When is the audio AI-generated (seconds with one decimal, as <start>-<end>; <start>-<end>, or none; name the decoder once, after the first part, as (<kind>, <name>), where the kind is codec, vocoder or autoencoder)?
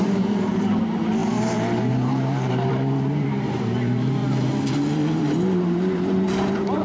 0.0-4.2 (vocoder, BigVGAN v2); 5.2-6.8